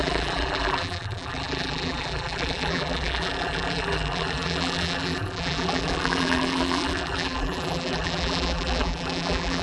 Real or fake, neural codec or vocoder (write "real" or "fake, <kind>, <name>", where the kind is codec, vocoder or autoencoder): fake, vocoder, BigVGAN v2